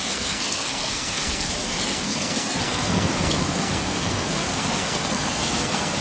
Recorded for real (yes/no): no